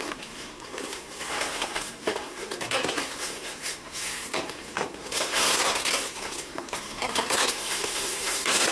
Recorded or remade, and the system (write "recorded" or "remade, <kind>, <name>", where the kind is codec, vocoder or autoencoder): remade, codec, SNAC